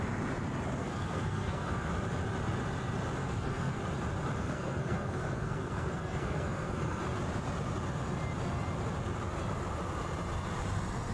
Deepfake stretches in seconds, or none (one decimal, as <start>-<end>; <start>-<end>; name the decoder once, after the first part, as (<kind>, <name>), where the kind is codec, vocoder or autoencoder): 0.8-1.9 (codec, SNAC); 3.2-3.8; 4.4-7.0